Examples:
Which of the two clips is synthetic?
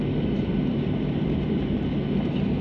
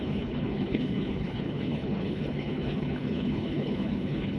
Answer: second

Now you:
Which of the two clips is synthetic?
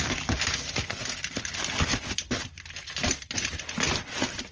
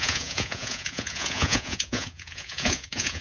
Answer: second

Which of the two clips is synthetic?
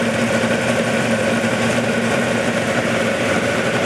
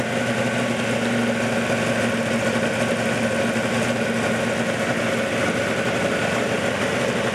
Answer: first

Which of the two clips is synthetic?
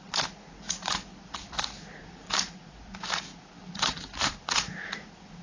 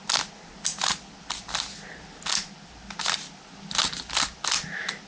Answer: first